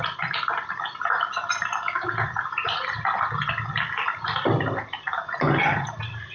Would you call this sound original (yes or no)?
yes